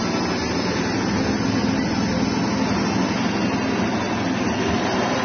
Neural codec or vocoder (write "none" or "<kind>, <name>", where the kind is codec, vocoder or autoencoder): none